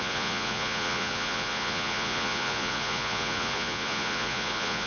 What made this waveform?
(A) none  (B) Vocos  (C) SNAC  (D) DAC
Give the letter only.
B